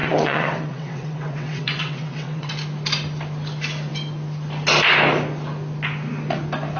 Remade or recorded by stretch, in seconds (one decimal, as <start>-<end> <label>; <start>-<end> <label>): 0.0-2.5 remade; 2.5-6.8 recorded